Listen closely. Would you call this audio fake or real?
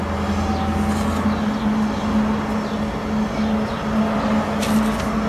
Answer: real